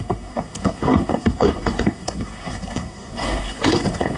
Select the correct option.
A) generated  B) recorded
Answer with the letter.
A